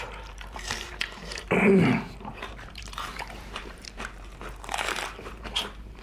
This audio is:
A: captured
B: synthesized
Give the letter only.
B